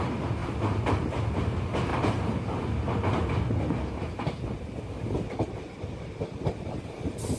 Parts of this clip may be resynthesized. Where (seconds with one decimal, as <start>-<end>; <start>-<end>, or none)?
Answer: 0.4-1.2; 1.9-2.4; 4.0-5.0